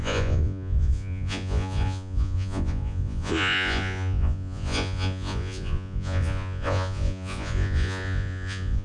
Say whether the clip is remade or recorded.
remade